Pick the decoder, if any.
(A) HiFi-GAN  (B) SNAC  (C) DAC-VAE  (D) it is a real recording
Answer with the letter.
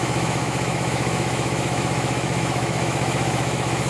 C